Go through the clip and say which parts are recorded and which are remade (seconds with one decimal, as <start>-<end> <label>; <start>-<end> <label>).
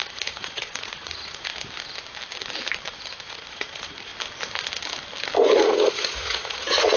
0.0-1.5 remade; 1.5-3.3 recorded; 3.3-4.1 remade; 4.1-5.4 recorded; 5.4-7.0 remade